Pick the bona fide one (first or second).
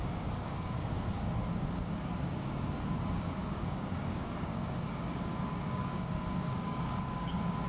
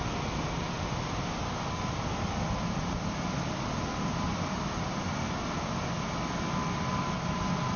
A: second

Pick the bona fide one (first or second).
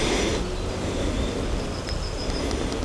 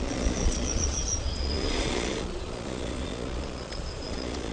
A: first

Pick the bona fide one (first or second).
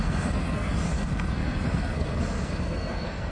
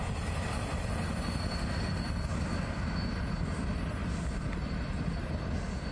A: second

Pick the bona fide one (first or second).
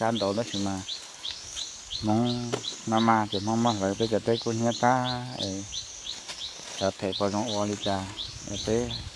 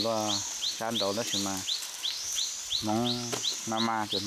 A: second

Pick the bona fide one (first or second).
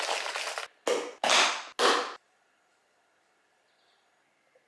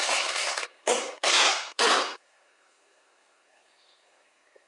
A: first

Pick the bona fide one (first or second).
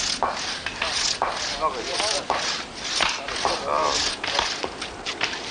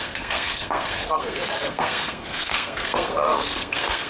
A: first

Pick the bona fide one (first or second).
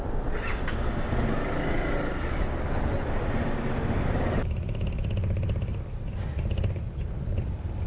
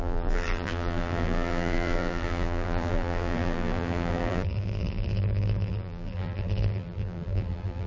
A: first